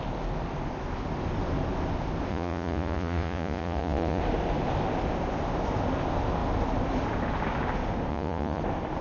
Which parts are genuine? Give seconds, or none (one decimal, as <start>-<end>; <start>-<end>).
0.0-2.3; 4.2-8.1; 8.6-9.0